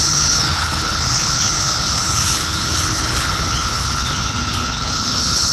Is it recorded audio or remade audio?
remade